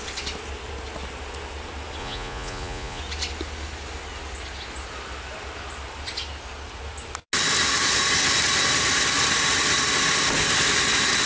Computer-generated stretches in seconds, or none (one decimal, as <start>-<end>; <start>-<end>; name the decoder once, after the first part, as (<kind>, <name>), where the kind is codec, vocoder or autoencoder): 2.0-3.0 (vocoder, Vocos)